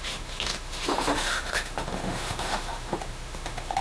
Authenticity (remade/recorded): remade